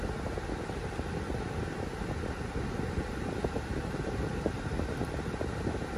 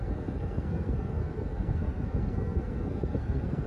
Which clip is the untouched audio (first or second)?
first